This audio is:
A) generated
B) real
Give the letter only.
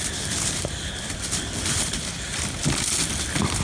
A